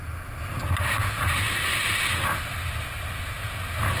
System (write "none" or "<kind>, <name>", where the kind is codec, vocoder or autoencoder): none